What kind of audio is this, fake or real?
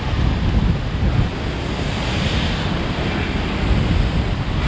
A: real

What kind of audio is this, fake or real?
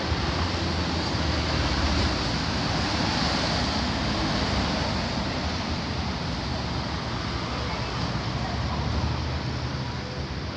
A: real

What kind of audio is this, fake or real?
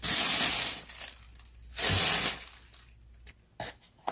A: real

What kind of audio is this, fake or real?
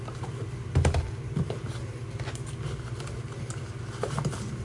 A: real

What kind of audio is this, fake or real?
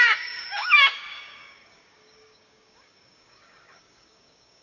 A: fake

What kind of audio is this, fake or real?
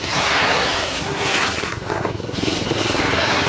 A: fake